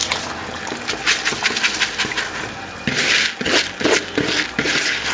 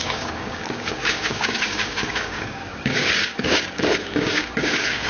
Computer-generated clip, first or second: second